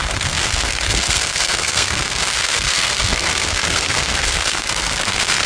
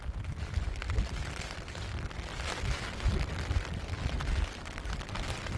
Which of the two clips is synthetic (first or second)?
first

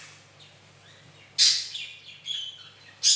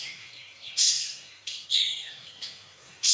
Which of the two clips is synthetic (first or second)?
second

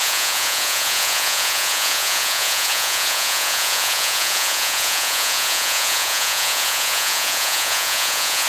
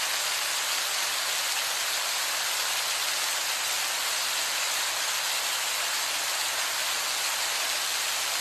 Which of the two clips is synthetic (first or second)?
first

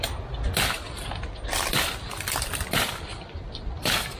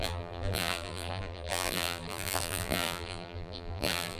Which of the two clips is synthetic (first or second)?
second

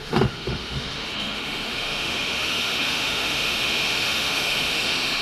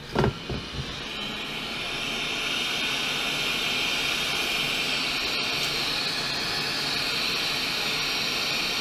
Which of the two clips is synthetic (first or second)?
first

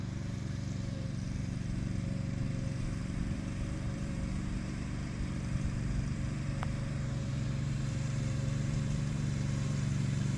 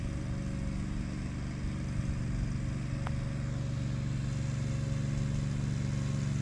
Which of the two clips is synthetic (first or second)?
first